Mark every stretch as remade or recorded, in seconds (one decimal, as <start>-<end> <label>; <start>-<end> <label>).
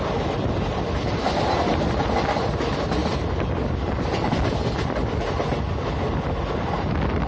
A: 0.0-7.3 recorded